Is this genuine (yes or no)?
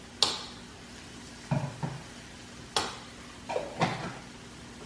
yes